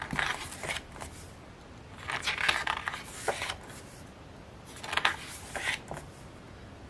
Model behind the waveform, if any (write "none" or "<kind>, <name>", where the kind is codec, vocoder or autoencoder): none